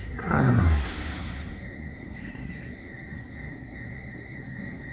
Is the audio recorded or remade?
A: remade